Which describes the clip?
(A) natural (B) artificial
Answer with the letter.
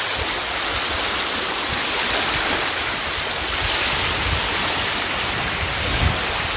A